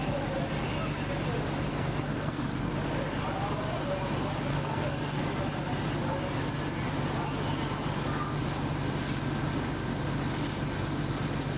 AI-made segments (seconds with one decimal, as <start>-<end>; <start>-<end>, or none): 1.7-2.7; 4.5-5.2